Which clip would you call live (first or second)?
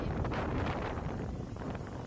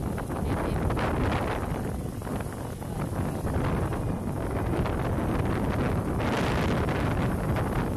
second